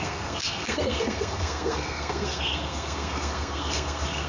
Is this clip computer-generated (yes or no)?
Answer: yes